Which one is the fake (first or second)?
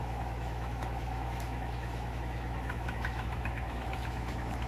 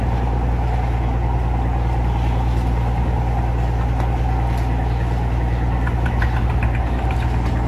first